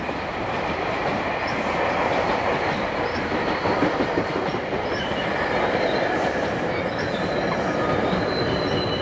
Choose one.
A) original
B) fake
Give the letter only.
A